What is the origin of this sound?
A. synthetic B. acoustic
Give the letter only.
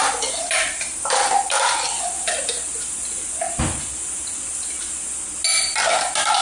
B